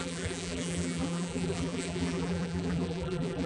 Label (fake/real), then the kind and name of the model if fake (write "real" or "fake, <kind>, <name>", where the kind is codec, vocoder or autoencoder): fake, vocoder, BigVGAN v2